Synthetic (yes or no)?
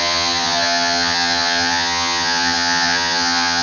yes